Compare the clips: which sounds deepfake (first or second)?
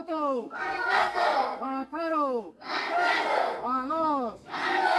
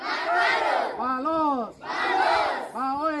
first